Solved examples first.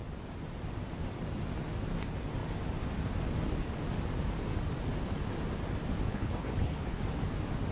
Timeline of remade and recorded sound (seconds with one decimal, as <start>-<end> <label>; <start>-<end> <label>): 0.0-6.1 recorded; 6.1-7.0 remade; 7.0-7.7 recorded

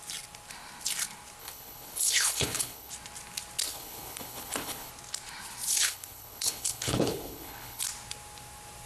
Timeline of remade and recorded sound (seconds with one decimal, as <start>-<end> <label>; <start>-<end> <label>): 0.0-1.4 recorded; 1.4-2.9 remade; 2.9-3.6 recorded; 3.6-4.9 remade; 4.9-5.7 recorded; 5.7-7.8 remade; 7.8-8.9 recorded

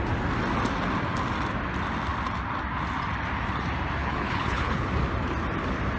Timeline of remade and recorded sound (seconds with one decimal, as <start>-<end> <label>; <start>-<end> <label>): 0.0-4.0 recorded; 4.0-4.9 remade; 4.9-6.0 recorded

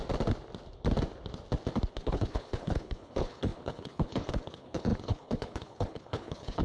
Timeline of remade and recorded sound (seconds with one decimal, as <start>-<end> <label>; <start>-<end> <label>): 0.0-1.9 recorded; 1.9-6.6 remade

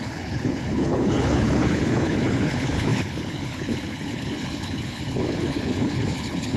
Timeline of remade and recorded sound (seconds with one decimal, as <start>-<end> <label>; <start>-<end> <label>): 0.0-6.6 remade

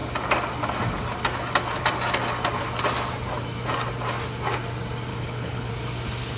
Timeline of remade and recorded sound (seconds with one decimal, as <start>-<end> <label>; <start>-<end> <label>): 0.0-5.1 recorded; 5.1-5.7 remade; 5.7-6.4 recorded